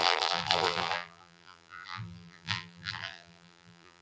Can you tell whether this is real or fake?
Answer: fake